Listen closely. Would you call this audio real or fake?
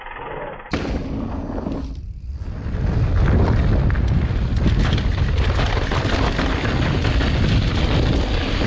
real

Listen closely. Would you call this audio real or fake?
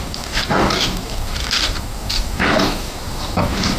fake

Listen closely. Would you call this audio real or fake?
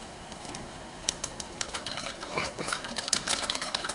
fake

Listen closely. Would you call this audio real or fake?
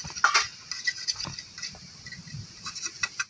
real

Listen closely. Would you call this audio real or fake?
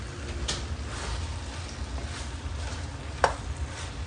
real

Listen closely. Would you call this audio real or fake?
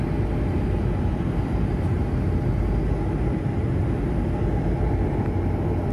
real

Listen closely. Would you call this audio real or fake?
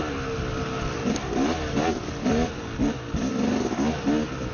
real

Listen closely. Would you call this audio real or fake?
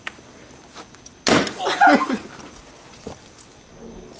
real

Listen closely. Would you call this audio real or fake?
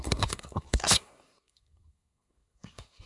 fake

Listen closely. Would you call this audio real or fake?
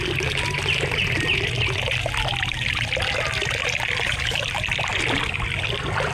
real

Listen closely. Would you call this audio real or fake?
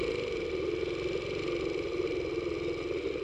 real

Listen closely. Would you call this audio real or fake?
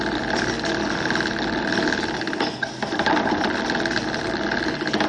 real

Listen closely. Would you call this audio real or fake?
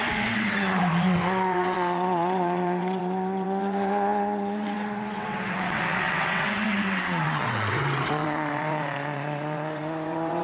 fake